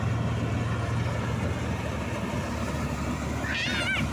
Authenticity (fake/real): real